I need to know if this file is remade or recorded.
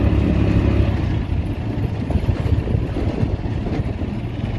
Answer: recorded